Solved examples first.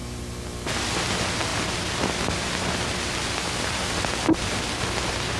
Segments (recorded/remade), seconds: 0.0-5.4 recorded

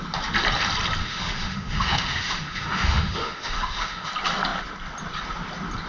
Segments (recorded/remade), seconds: 0.0-1.0 recorded; 1.0-4.1 remade; 4.1-5.9 recorded

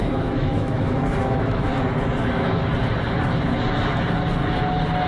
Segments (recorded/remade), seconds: 0.0-1.7 remade; 1.7-2.3 recorded; 2.3-2.7 remade; 2.7-5.1 recorded

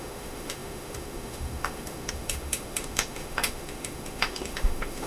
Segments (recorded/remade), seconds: 0.0-5.1 remade

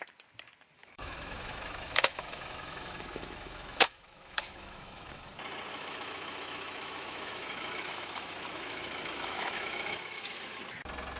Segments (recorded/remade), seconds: 0.0-0.8 recorded; 0.8-5.3 remade; 5.3-5.7 recorded; 5.7-10.6 remade; 10.6-11.2 recorded

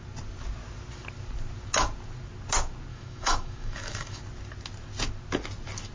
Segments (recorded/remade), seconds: 0.0-2.9 recorded; 2.9-4.2 remade; 4.2-5.9 recorded

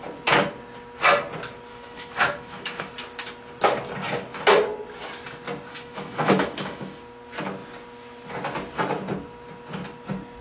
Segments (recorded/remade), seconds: 0.0-1.7 recorded; 1.7-2.9 remade; 2.9-5.7 recorded; 5.7-7.0 remade; 7.0-10.4 recorded

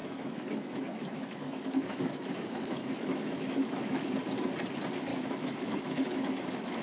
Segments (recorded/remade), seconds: 0.0-4.1 remade; 4.1-5.1 recorded; 5.1-6.8 remade